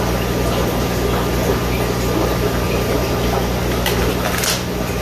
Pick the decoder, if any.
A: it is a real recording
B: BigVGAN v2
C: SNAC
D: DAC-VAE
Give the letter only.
A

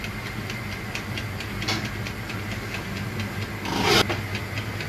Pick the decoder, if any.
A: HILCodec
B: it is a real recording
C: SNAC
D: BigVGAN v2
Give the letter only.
B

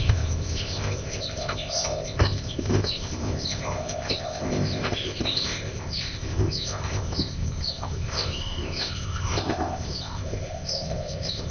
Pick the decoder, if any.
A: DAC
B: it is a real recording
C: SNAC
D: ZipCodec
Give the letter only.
D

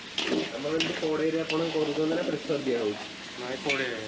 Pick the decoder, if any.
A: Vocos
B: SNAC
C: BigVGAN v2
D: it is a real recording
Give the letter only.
D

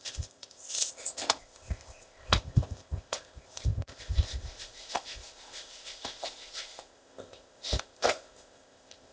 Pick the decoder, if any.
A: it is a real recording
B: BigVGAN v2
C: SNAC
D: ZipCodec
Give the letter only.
D